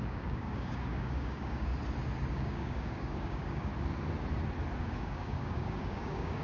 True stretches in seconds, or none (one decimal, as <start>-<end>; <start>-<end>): 1.7-2.3; 3.7-4.8